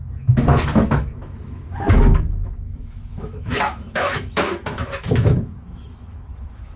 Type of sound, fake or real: fake